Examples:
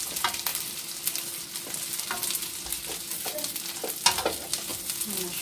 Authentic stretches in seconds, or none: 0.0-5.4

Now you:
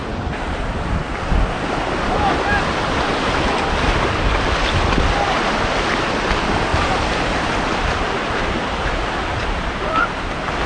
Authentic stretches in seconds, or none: 1.2-6.7; 10.2-10.7

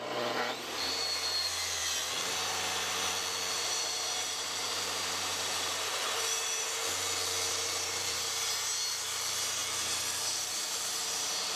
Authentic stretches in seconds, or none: 1.8-3.5; 6.8-7.5

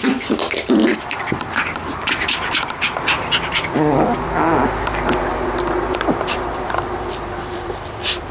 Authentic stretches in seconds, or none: 0.8-5.2

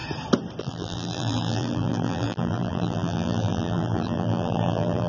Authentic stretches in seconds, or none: 0.0-0.6

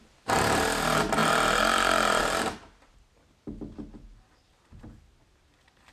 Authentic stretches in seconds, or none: 0.0-5.9

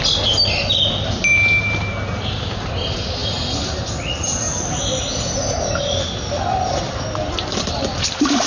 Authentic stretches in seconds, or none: 0.0-8.5

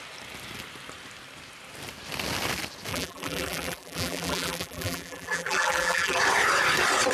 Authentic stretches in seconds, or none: 0.0-2.9; 6.2-7.1